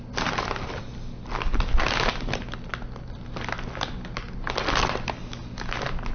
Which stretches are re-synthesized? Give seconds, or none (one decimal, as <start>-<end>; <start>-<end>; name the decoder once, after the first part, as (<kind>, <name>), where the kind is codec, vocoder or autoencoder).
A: none